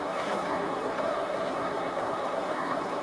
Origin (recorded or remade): remade